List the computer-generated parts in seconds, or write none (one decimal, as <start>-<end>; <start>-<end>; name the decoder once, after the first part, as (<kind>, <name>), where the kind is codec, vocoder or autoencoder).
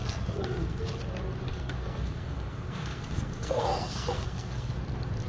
0.0-0.9 (codec, SNAC); 1.5-4.7